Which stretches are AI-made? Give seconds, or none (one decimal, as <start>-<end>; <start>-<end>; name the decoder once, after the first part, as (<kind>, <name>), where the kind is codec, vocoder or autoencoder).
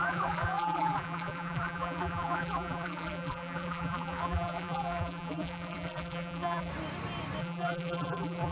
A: 0.0-6.7 (vocoder, BigVGAN v2); 7.4-8.5